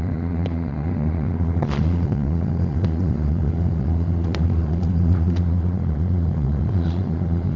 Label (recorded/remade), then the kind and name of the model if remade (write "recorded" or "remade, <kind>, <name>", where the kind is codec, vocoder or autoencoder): remade, vocoder, Vocos